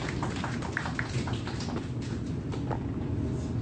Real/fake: real